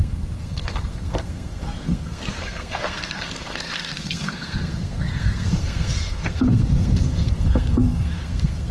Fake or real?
fake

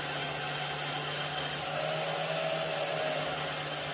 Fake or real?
real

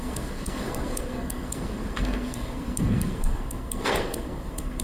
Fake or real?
fake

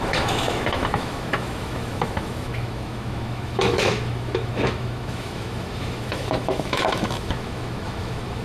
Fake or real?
fake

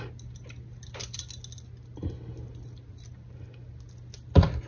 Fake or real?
real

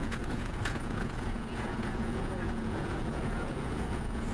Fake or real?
fake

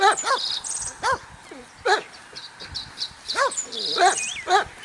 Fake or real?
real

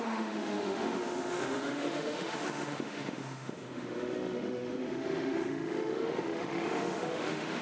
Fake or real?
fake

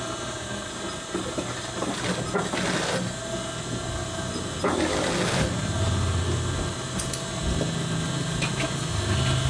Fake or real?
real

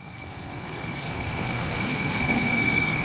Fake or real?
fake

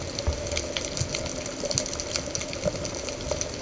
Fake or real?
real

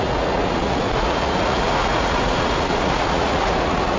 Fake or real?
fake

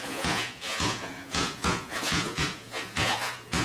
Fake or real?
fake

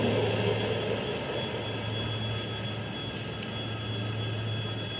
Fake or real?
real